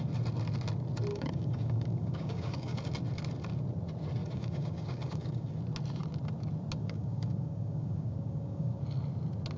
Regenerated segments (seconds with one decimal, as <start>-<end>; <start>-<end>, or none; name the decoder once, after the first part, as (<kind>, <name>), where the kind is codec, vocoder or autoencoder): 1.1-2.8 (codec, DAC); 4.2-5.6; 6.8-8.8